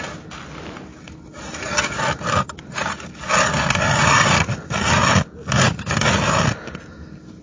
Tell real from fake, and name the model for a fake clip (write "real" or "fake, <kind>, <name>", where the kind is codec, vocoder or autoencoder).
real